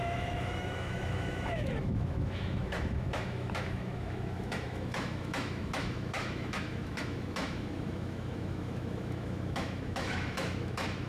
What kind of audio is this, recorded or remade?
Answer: remade